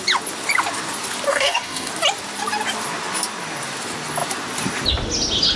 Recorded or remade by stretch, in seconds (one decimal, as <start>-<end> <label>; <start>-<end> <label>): 0.0-1.3 recorded; 1.3-1.9 remade; 1.9-5.6 recorded